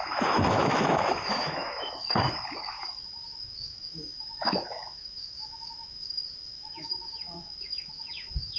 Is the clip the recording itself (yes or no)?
no